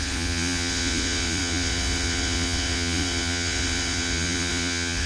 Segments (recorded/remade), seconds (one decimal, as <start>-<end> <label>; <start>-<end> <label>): 0.0-5.1 remade